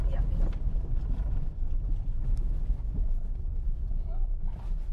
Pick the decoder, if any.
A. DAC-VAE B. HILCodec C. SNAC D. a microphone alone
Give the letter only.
D